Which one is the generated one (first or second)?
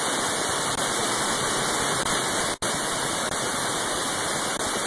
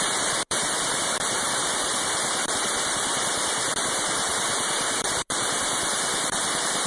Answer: second